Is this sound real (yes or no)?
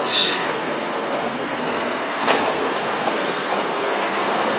no